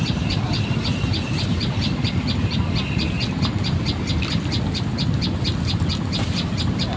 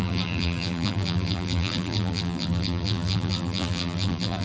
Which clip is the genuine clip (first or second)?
first